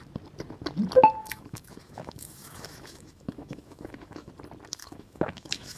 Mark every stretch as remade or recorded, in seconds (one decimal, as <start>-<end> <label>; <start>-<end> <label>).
0.0-1.2 recorded; 1.2-4.3 remade; 4.3-4.8 recorded; 4.8-5.8 remade